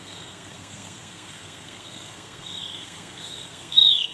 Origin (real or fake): fake